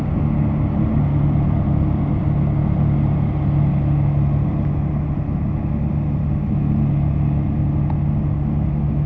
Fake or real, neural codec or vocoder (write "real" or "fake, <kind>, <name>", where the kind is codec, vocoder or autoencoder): real